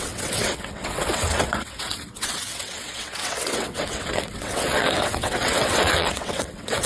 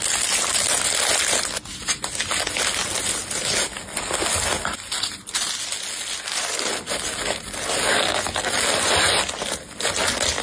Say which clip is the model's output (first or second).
first